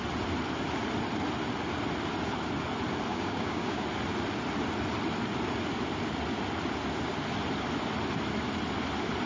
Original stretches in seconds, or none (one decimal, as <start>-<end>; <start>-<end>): 0.0-3.1; 3.8-9.3